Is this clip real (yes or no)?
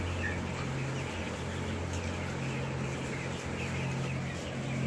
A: yes